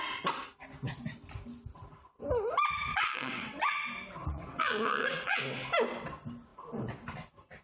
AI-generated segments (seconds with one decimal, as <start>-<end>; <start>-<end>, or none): 2.9-3.8; 4.2-5.4